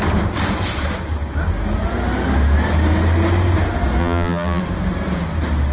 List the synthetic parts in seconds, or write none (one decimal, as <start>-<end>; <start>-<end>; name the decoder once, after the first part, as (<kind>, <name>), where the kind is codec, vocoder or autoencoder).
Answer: 4.0-4.6 (vocoder, BigVGAN v2)